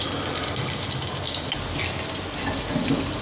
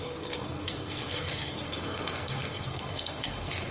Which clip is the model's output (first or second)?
second